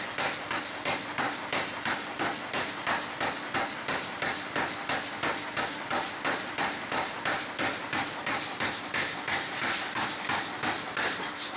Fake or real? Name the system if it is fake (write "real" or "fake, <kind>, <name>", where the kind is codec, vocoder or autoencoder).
fake, vocoder, BigVGAN v2